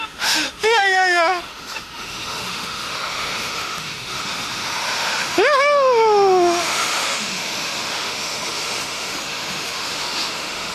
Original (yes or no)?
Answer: no